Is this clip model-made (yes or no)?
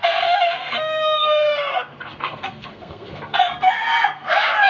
yes